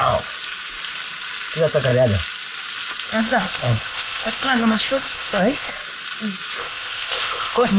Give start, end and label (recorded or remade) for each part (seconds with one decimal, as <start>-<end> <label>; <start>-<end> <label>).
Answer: 0.0-3.2 recorded; 3.2-5.7 remade; 5.7-6.6 recorded; 6.6-7.8 remade